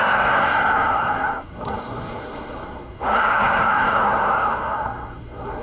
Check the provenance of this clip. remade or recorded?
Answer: remade